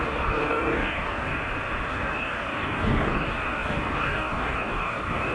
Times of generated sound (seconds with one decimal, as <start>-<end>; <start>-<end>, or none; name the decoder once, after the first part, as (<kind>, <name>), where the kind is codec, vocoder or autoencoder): 0.0-1.4 (codec, DAC); 1.9-5.3